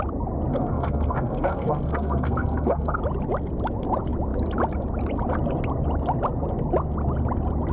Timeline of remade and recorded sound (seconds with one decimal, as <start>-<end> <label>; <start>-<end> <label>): 0.0-0.5 recorded; 0.5-3.0 remade; 3.0-7.7 recorded